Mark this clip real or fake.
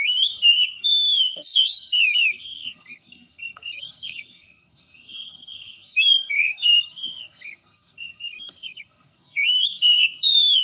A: fake